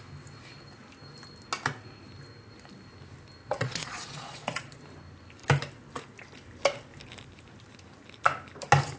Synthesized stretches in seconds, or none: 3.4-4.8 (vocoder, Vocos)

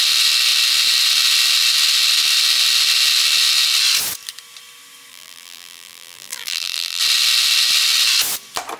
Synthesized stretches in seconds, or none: 5.1-7.0 (vocoder, BigVGAN v2)

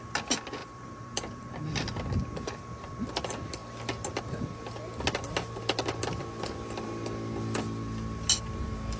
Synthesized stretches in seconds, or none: 0.6-1.5 (vocoder, BigVGAN v2)

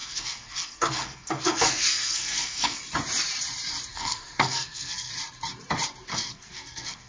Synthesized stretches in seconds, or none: 0.0-2.8 (codec, SNAC); 3.9-5.1; 6.1-7.1

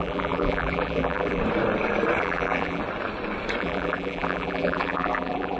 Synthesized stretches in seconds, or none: 0.0-1.4 (vocoder, BigVGAN v2); 2.2-2.8; 3.6-5.6